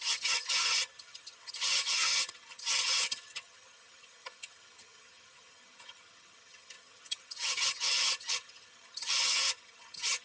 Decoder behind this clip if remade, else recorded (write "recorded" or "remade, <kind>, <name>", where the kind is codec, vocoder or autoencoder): remade, vocoder, HiFi-GAN